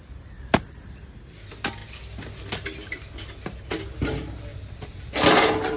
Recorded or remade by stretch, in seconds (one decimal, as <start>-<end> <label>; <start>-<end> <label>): 0.0-4.5 recorded; 4.5-5.1 remade; 5.1-5.8 recorded